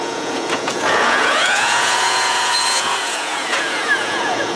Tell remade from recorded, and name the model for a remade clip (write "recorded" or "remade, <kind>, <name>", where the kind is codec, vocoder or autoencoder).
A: remade, vocoder, Vocos